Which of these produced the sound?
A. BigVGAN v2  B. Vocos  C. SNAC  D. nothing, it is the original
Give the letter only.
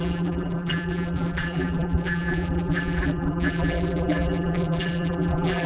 A